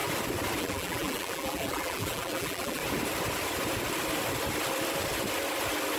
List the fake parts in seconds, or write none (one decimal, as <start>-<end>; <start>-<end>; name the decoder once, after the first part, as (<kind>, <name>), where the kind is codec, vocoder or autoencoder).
0.6-2.8 (vocoder, BigVGAN v2)